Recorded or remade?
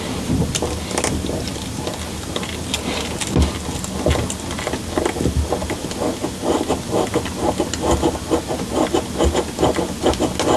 recorded